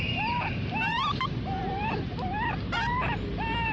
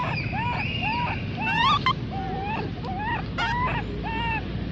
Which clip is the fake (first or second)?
first